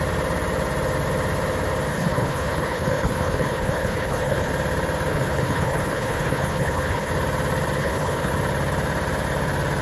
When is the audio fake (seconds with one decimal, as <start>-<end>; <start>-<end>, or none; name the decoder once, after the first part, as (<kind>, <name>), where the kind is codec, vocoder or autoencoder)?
1.9-4.5 (codec, HILCodec); 5.1-7.1; 7.8-8.3